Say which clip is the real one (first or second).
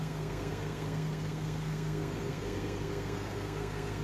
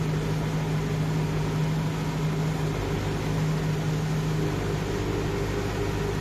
second